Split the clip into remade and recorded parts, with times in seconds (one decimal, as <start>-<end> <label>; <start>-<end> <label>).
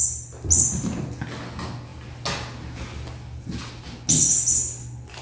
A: 0.0-5.2 recorded